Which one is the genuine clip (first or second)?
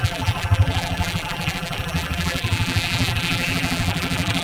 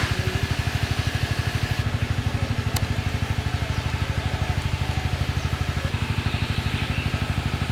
second